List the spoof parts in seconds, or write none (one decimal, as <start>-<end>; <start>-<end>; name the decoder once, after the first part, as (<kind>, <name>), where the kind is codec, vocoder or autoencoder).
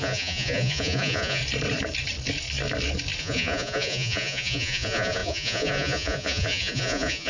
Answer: 0.0-1.4 (vocoder, Vocos); 3.2-7.3